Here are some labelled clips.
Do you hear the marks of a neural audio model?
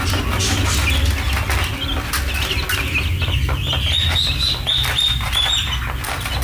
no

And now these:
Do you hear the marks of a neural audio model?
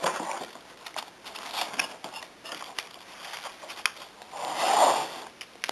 no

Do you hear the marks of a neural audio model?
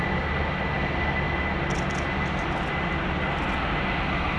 no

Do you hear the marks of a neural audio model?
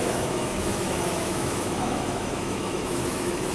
yes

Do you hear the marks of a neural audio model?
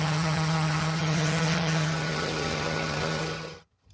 yes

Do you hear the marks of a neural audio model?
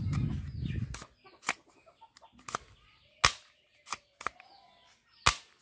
no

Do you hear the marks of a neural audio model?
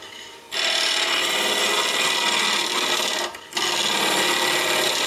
no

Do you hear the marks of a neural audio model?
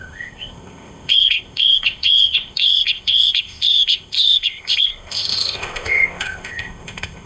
yes